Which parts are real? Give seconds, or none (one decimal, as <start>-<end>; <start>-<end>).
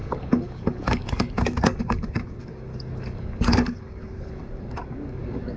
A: none